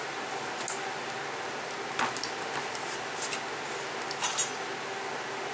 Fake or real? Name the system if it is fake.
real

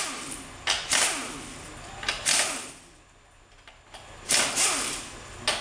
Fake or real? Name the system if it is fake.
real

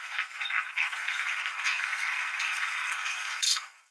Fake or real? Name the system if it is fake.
fake, codec, SNAC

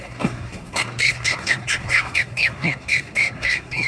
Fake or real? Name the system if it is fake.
fake, codec, SNAC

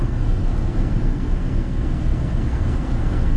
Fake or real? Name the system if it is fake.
fake, codec, SNAC